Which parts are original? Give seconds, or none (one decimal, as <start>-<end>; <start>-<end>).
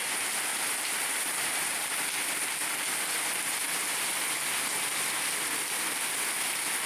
0.0-0.5; 1.9-6.9